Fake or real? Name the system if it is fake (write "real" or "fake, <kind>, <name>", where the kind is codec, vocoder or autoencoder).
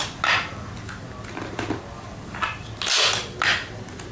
real